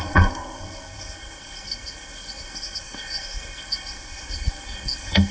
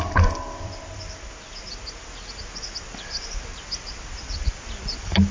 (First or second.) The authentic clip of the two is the second